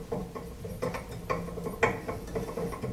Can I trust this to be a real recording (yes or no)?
yes